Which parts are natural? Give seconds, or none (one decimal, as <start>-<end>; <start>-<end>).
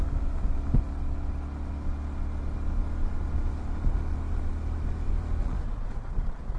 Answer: 0.0-5.4